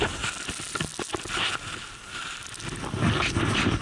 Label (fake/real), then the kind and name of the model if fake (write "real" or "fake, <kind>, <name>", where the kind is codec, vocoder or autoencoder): real